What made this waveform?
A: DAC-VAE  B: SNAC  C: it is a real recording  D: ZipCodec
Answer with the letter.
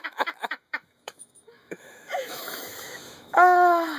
A